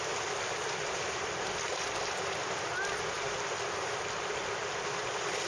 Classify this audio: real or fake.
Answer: real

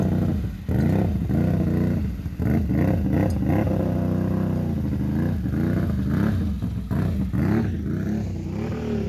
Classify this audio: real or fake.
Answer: real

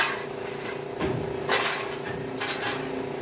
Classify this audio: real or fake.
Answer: real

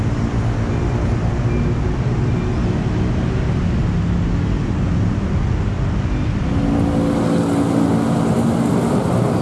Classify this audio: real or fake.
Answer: real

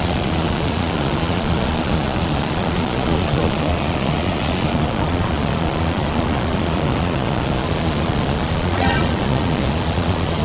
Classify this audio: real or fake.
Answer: fake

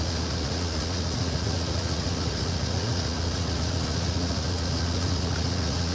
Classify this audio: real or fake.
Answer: fake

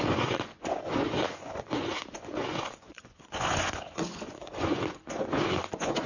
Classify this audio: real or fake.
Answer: fake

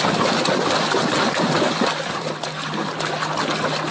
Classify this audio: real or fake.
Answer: real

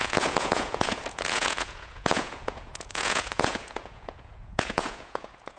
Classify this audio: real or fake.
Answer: fake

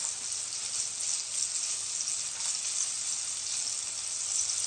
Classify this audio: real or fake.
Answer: real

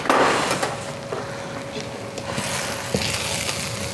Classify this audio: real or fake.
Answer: real